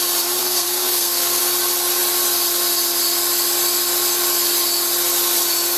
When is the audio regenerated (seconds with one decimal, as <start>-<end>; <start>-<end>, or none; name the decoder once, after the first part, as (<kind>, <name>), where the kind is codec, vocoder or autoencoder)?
0.4-1.4 (codec, SNAC)